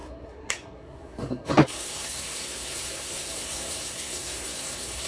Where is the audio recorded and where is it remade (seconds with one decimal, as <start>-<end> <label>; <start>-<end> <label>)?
0.0-5.1 remade